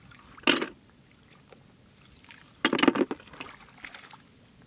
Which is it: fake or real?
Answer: real